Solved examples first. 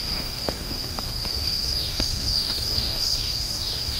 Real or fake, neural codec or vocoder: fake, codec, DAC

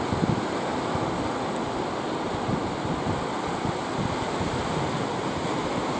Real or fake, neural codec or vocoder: real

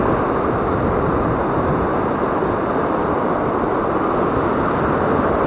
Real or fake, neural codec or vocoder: real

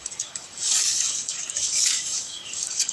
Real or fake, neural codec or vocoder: fake, codec, DAC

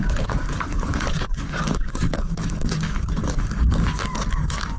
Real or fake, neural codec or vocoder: fake, codec, DAC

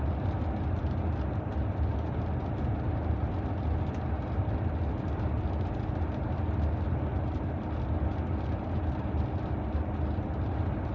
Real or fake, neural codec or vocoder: real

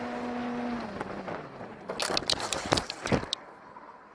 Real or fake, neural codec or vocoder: real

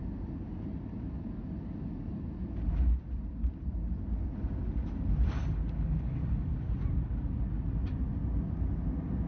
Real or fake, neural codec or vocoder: real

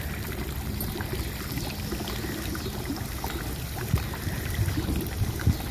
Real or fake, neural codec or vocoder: real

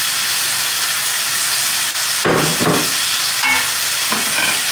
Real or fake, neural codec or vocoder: real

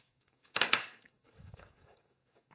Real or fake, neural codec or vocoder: fake, codec, DAC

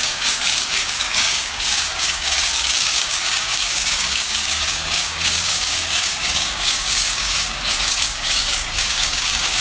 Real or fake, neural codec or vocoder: fake, codec, DAC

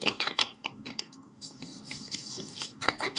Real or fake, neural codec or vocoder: fake, codec, DAC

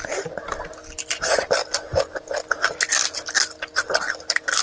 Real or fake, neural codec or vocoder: real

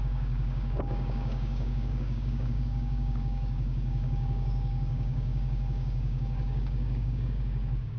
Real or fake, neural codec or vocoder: fake, codec, DAC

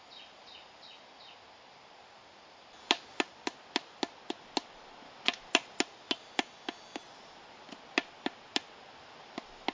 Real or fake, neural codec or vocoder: real